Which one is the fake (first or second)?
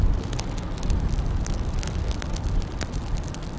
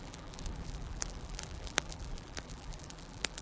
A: second